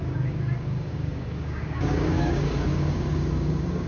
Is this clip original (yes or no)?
no